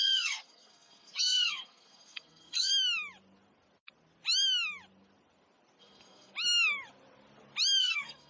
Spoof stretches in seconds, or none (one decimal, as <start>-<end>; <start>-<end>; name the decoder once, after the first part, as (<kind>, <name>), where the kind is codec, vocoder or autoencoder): 0.0-2.7 (codec, SNAC); 5.8-6.3; 7.8-8.3